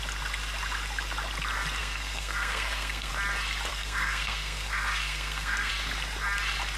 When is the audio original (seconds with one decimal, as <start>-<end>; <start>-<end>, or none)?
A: 0.0-1.8; 3.1-3.7; 5.7-6.8